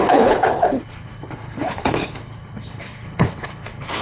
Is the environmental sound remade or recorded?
remade